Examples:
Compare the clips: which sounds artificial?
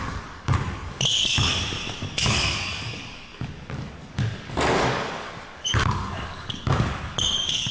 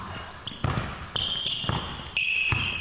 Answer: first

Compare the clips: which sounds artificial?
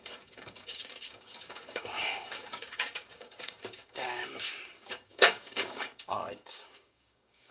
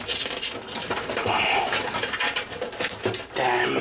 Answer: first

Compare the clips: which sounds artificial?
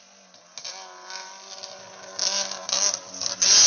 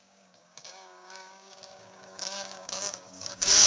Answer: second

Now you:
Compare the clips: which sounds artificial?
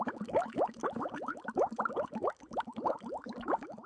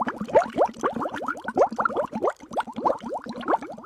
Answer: first